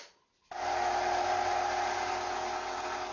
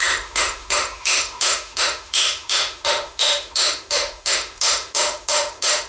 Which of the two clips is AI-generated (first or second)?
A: second